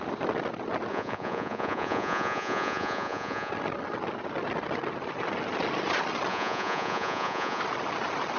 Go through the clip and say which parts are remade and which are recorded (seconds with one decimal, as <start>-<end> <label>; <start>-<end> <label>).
0.0-0.9 recorded; 0.9-3.5 remade; 3.5-6.3 recorded; 6.3-7.6 remade; 7.6-8.4 recorded